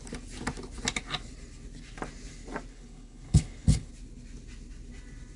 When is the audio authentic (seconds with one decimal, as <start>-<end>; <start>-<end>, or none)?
0.0-2.7; 3.9-5.4